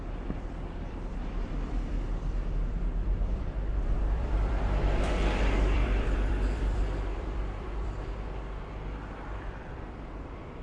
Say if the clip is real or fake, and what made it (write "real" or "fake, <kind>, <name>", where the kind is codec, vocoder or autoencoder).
fake, vocoder, BigVGAN v2